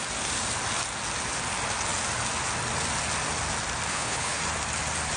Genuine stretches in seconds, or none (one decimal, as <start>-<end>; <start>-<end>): 0.0-3.9; 4.4-5.2